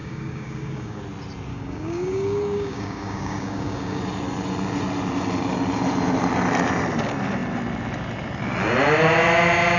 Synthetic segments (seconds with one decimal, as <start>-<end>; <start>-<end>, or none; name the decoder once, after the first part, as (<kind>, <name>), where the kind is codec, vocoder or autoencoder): 0.0-1.0 (codec, DAC); 1.5-4.0